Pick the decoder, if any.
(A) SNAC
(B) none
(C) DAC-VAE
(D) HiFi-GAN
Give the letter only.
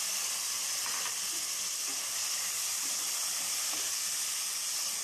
B